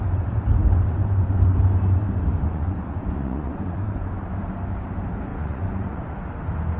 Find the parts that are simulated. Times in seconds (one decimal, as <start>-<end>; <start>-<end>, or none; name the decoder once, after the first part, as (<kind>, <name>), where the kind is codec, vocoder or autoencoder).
2.5-4.1 (vocoder, Vocos); 5.3-6.0